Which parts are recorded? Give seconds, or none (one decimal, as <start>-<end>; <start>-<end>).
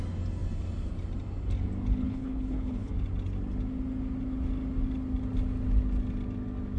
0.0-2.0; 2.9-6.8